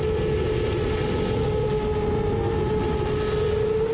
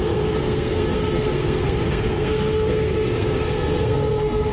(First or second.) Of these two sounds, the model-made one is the second